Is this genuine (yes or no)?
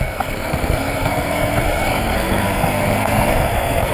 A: no